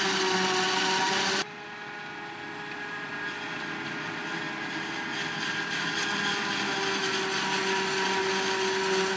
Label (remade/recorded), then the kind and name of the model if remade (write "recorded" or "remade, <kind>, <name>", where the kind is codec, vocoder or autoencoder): recorded